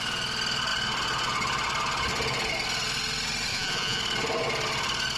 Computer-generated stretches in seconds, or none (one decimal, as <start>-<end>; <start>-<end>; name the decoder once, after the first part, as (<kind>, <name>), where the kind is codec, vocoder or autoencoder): 3.5-4.0 (vocoder, Vocos)